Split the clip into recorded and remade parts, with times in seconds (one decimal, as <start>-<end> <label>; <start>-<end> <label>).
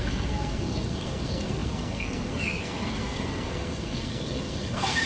0.0-5.1 remade